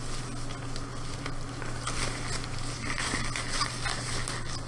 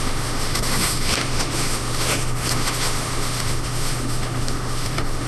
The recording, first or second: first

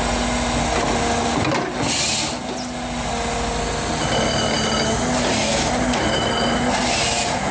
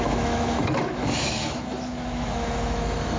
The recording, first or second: first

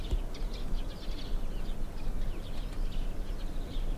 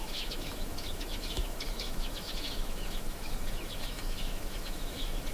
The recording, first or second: first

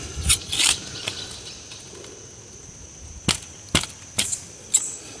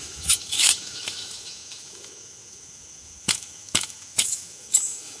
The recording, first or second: first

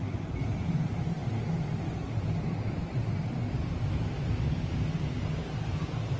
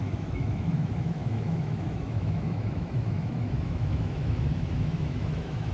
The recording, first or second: first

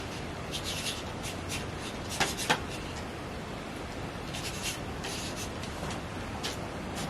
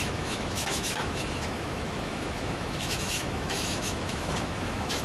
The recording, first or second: first